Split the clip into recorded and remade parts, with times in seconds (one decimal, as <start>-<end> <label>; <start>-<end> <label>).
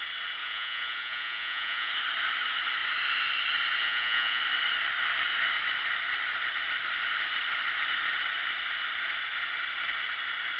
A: 0.0-0.4 recorded; 0.4-1.9 remade; 1.9-3.8 recorded; 3.8-4.4 remade; 4.4-10.6 recorded